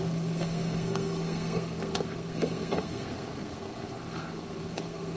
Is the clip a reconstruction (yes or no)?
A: yes